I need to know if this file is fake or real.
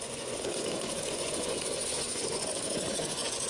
fake